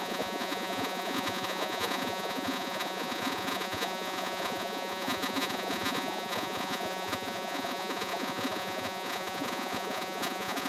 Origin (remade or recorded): remade